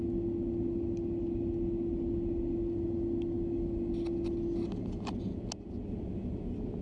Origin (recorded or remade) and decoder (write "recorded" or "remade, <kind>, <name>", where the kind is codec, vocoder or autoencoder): recorded